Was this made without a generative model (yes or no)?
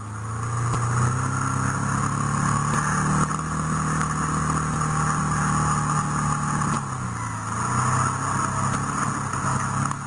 yes